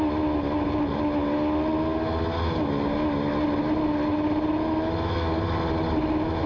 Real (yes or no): yes